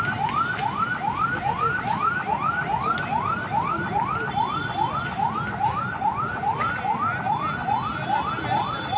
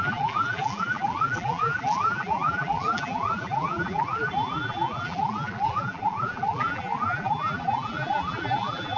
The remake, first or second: second